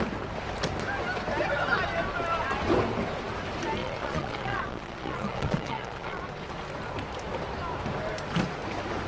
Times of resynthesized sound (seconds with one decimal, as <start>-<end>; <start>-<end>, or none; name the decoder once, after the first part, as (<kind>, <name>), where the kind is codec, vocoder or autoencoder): 3.8-6.2 (vocoder, Vocos)